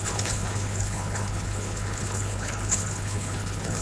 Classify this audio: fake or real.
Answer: fake